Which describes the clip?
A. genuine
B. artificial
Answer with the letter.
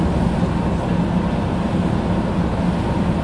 A